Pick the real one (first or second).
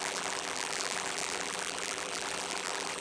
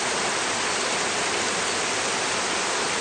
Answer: second